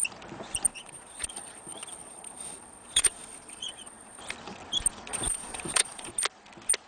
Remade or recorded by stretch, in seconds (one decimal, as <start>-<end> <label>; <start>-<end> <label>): 0.0-0.7 recorded; 0.7-4.2 remade; 4.2-5.1 recorded; 5.1-6.1 remade; 6.1-6.9 recorded